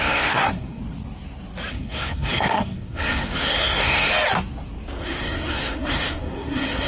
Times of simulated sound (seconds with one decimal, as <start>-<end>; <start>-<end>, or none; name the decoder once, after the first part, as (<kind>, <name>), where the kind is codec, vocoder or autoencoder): 0.0-0.8 (codec, SNAC); 1.7-4.1; 5.0-6.9